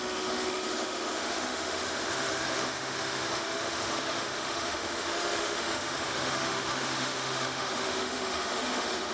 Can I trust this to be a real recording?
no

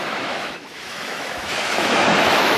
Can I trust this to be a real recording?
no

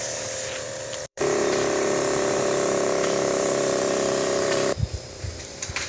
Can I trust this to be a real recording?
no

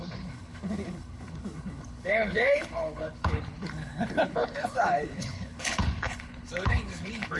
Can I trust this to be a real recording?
no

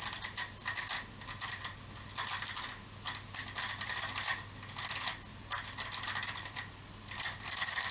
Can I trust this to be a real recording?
yes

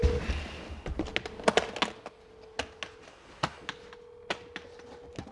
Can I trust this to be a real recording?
yes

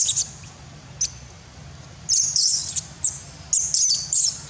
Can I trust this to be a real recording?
yes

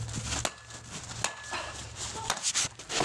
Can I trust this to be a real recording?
yes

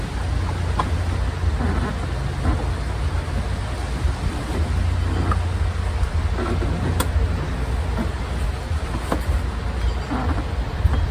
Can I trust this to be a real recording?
yes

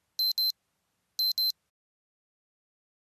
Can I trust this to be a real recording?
yes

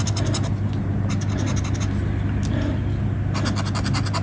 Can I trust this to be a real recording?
yes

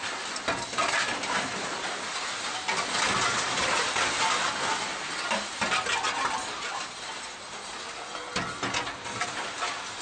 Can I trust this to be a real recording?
yes